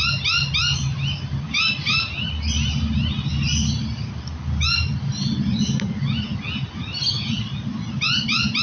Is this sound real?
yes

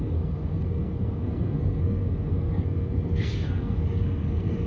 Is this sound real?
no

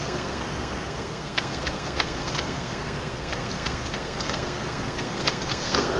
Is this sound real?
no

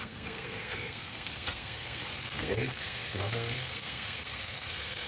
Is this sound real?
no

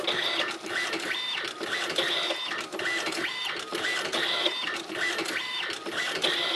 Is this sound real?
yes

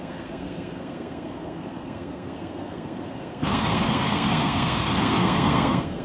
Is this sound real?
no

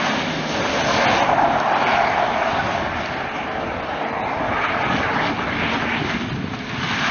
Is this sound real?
yes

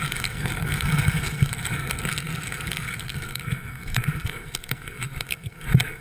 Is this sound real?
no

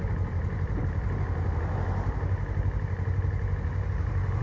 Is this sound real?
yes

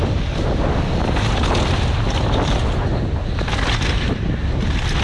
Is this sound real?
yes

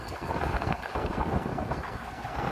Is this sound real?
no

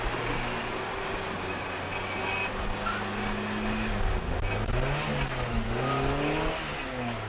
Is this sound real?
yes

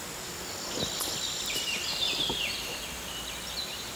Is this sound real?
yes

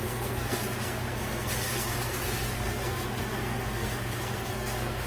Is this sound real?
no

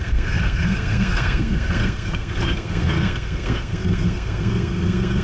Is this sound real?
no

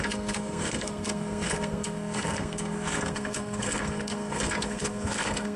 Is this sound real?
no